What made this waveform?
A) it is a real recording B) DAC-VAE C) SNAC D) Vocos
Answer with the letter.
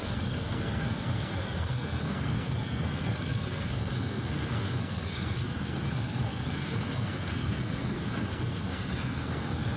C